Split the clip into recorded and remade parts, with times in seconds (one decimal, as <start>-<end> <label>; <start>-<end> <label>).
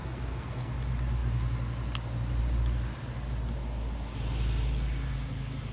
0.0-0.7 remade; 0.7-5.7 recorded